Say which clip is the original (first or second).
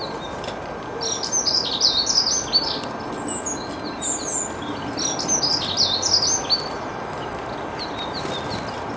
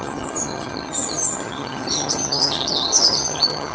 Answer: first